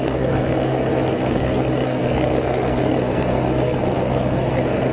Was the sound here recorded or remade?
remade